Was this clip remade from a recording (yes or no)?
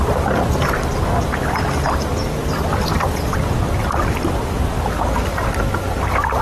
no